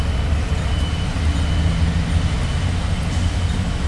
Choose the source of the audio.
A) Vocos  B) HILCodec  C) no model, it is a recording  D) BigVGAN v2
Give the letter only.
C